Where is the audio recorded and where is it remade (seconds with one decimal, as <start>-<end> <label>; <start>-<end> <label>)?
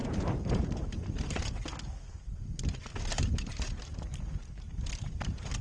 0.0-1.5 remade; 1.5-3.1 recorded; 3.1-4.4 remade; 4.4-5.6 recorded